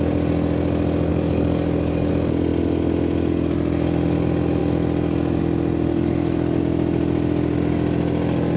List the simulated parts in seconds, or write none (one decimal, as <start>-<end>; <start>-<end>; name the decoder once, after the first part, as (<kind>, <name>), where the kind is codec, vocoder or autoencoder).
1.1-2.1 (codec, DAC); 5.9-6.6